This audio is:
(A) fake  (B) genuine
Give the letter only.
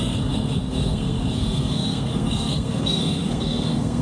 A